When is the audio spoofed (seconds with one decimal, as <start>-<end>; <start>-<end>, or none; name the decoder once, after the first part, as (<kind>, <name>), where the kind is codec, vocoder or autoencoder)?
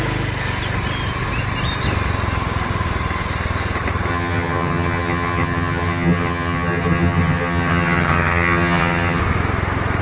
4.1-9.2 (vocoder, HiFi-GAN)